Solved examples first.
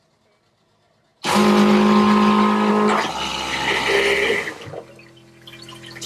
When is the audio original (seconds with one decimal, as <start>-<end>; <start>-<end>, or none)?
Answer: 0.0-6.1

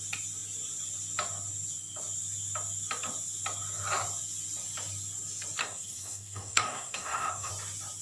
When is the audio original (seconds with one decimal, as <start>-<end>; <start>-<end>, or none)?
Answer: 0.0-5.6; 7.5-8.0

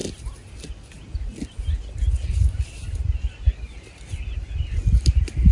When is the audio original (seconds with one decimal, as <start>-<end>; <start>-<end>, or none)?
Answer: 0.0-5.5

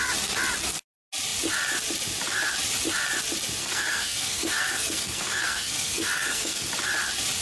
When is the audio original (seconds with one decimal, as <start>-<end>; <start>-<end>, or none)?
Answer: 0.0-3.6; 6.7-7.4

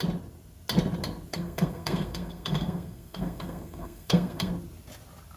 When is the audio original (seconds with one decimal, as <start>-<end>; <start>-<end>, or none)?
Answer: 0.0-1.3; 4.5-5.4

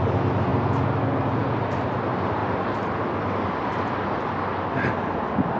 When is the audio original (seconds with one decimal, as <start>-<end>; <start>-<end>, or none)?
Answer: 0.0-5.6